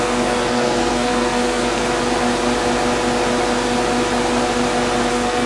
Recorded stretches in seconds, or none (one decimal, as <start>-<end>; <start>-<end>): 1.8-5.1

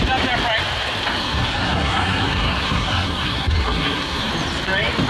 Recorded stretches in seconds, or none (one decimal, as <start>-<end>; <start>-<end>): 0.0-1.2; 4.3-5.1

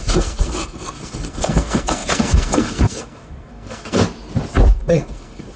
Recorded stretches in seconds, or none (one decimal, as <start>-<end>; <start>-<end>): 4.0-4.7

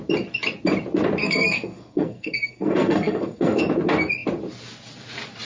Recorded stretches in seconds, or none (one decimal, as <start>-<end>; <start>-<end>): 0.0-1.2; 3.6-5.4

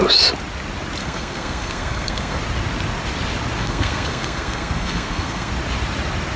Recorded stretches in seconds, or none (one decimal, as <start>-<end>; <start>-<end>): 0.0-1.0; 2.4-3.6; 5.5-6.4

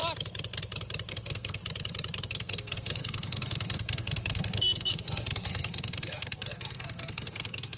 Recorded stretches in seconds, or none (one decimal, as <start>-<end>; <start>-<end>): 0.0-1.1; 1.6-2.3

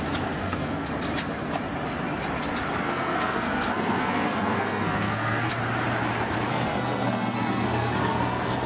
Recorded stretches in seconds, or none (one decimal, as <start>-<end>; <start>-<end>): 0.0-0.4; 0.9-2.8; 5.5-6.5